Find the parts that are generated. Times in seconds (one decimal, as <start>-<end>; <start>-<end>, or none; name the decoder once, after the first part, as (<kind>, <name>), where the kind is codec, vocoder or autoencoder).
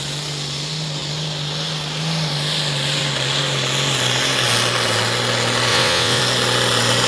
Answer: 5.7-6.2 (vocoder, WaveNeXt)